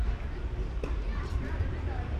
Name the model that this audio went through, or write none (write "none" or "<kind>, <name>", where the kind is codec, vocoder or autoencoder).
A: none